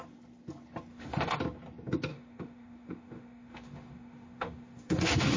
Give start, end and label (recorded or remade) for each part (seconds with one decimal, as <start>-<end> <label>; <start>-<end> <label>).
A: 0.0-0.9 recorded; 0.9-1.4 remade; 1.4-2.1 recorded; 2.1-5.4 remade